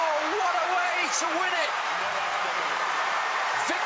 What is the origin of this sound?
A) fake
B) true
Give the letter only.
A